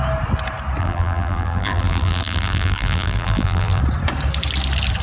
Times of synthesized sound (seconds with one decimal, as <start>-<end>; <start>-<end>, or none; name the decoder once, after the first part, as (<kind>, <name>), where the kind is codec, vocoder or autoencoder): 0.8-3.8 (vocoder, BigVGAN v2)